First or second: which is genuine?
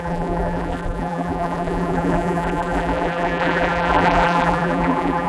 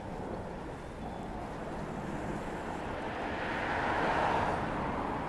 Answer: second